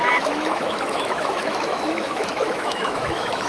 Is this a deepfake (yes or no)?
yes